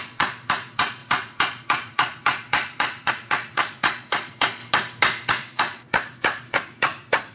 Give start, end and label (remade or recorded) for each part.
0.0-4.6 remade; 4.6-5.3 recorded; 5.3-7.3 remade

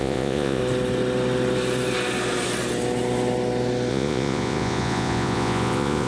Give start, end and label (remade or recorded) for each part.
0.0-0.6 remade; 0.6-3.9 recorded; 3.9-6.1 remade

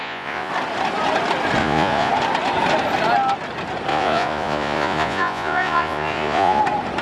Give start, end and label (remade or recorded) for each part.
0.0-0.5 remade; 0.5-1.6 recorded; 1.6-2.1 remade; 2.1-3.9 recorded; 3.9-6.6 remade; 6.6-7.0 recorded